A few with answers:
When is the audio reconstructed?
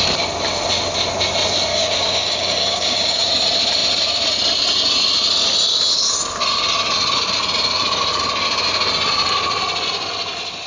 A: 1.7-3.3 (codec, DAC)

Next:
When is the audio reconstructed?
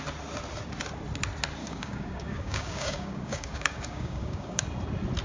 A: 1.6-4.6 (codec, DAC)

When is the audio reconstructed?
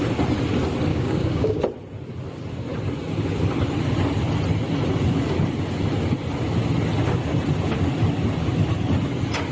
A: 0.9-1.6 (codec, DAC)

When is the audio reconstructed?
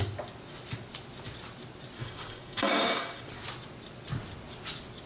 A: 2.0-3.2 (codec, DAC)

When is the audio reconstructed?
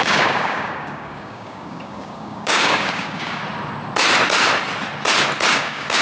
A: 0.0-3.4 (codec, DAC); 5.5-6.0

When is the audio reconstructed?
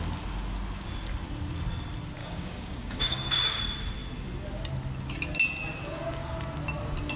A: 2.2-3.6 (codec, DAC)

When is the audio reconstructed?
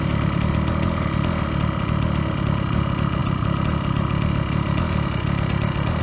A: none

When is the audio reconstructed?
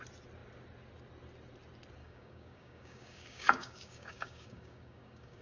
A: 2.0-5.4 (codec, DAC)